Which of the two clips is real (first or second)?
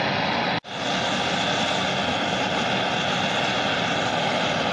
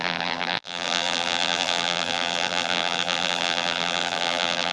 first